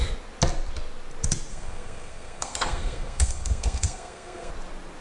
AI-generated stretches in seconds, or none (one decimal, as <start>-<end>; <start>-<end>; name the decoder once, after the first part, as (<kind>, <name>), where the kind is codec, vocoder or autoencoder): 1.5-4.5 (codec, SNAC)